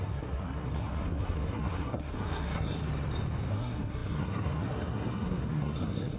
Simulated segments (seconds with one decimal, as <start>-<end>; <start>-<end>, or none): 0.0-2.8; 3.5-6.2